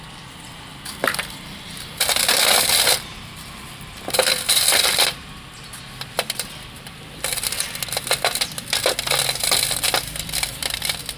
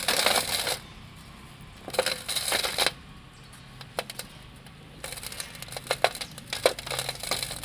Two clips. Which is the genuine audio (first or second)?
second